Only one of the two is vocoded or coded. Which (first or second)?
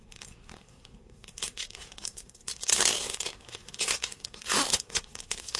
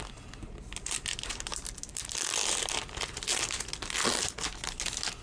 first